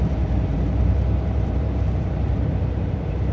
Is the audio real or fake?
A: fake